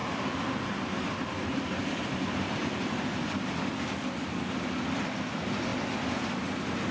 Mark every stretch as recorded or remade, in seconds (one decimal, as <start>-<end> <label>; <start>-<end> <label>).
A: 0.0-1.3 recorded; 1.3-2.6 remade; 2.6-5.1 recorded; 5.1-5.7 remade; 5.7-6.9 recorded